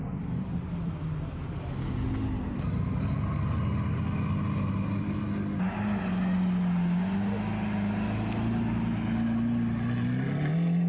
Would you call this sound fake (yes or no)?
no